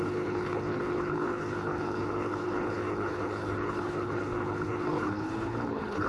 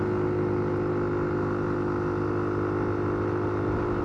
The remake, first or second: first